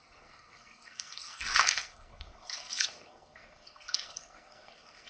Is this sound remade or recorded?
remade